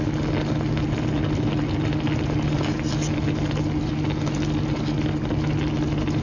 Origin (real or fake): real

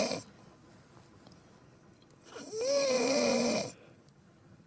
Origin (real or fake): real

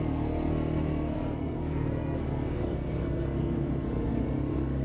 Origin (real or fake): fake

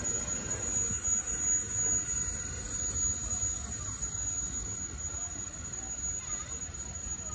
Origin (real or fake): real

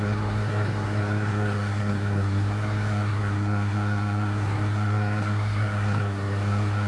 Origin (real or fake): fake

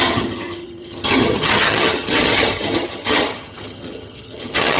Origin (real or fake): fake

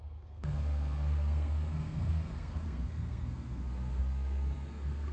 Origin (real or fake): fake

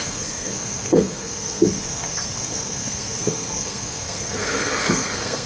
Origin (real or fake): fake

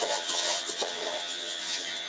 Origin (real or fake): fake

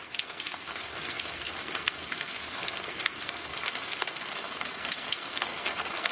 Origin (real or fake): fake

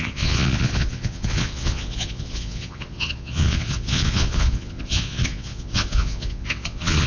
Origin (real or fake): fake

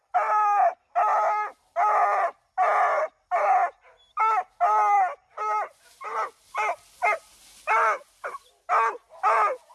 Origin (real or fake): real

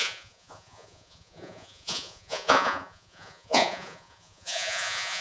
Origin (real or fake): fake